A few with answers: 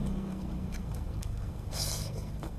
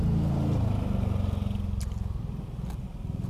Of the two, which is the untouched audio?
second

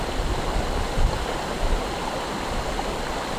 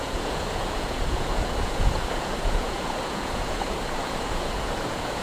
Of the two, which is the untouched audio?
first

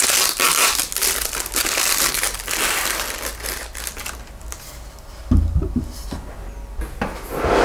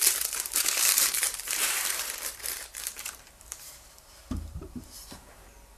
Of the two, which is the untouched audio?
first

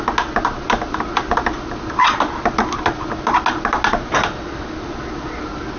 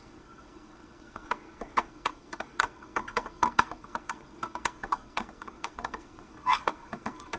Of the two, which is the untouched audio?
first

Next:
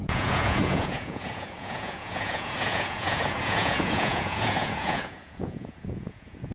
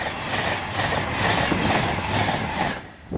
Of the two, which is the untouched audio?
second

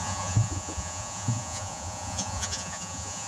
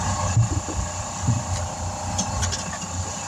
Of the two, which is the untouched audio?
second